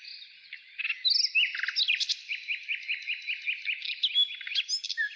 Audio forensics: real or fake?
real